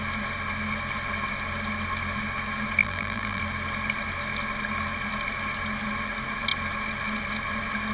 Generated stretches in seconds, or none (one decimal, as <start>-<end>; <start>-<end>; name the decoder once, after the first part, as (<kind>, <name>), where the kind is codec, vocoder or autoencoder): 2.8-3.4 (vocoder, BigVGAN v2)